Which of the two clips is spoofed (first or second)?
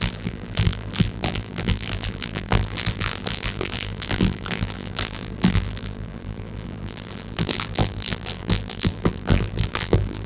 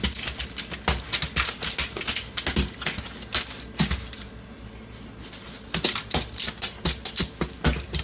first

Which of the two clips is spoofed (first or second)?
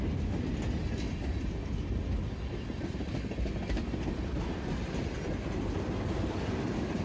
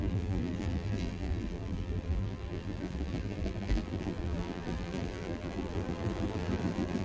second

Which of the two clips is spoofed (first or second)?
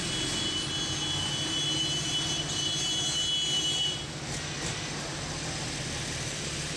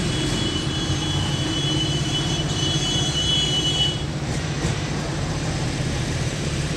second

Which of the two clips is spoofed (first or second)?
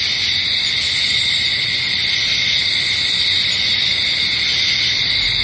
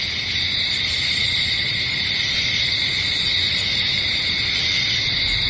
second